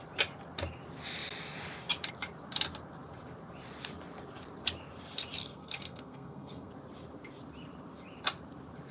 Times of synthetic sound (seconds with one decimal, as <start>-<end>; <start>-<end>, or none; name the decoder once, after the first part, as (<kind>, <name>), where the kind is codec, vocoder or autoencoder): 5.4-6.7 (codec, SNAC)